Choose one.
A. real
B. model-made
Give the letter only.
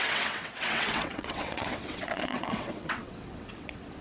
B